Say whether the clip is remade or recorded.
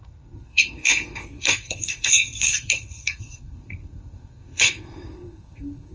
remade